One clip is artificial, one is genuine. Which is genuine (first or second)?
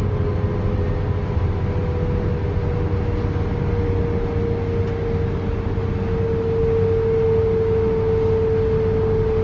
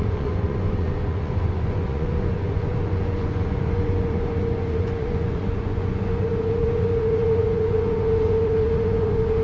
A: first